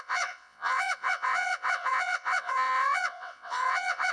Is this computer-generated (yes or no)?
yes